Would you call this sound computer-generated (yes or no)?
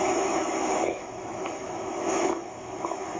yes